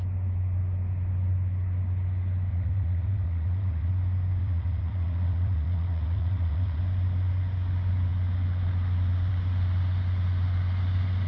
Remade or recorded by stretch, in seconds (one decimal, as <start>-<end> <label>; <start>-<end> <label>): 0.0-2.5 recorded; 2.5-3.9 remade; 3.9-4.4 recorded; 4.4-6.8 remade; 6.8-11.3 recorded